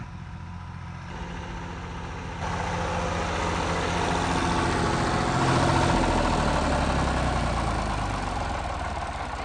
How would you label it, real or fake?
real